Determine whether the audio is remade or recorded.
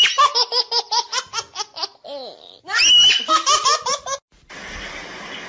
recorded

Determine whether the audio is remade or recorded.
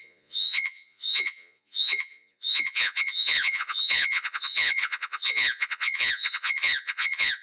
remade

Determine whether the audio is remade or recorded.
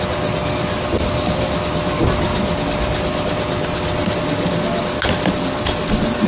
recorded